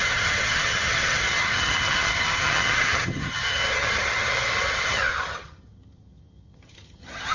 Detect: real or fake fake